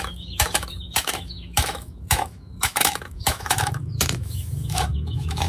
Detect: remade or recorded remade